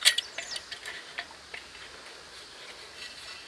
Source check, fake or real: real